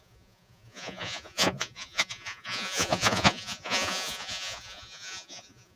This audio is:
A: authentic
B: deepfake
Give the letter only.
B